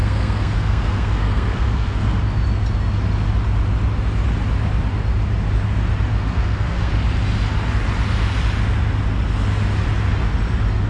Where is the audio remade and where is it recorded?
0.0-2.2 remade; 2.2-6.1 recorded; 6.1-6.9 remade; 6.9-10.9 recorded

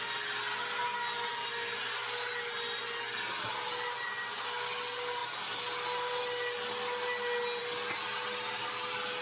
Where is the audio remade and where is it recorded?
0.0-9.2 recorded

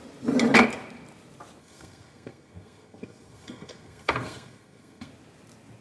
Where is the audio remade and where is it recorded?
0.0-1.6 recorded; 1.6-5.1 remade; 5.1-5.8 recorded

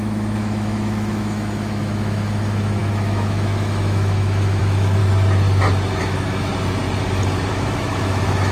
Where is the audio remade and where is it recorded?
0.0-5.0 remade; 5.0-6.0 recorded; 6.0-6.5 remade; 6.5-7.5 recorded; 7.5-8.5 remade

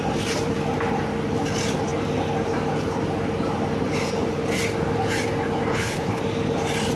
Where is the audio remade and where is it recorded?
0.0-5.7 recorded; 5.7-6.2 remade; 6.2-7.0 recorded

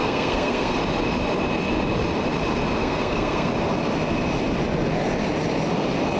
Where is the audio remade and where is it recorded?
0.0-0.8 remade; 0.8-2.8 recorded; 2.8-3.5 remade; 3.5-6.2 recorded

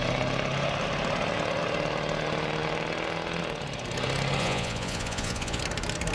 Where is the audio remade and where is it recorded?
0.0-4.4 recorded; 4.4-5.6 remade; 5.6-6.1 recorded